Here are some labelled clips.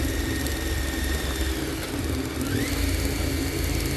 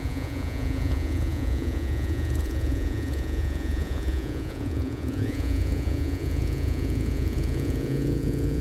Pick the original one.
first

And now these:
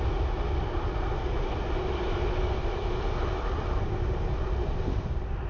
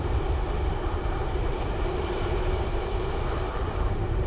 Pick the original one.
first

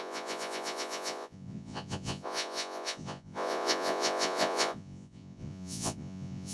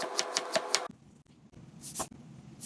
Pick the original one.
second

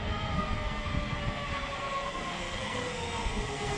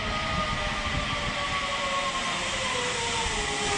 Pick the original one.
second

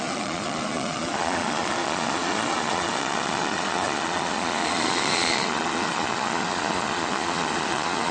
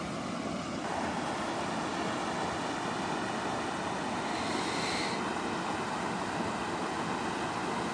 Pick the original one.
second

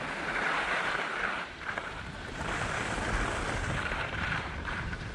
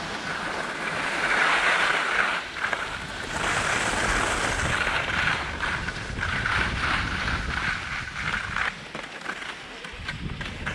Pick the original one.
second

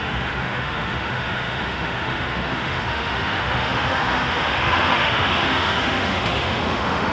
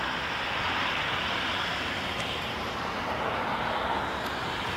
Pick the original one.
second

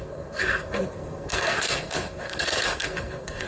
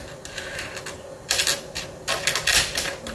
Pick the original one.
second